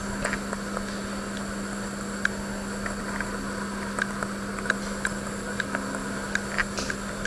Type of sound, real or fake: real